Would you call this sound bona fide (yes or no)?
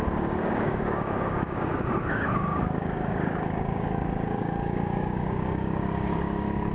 no